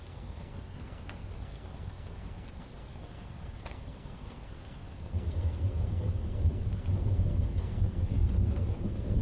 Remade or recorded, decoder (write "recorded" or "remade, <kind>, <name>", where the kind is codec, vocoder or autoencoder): remade, codec, SNAC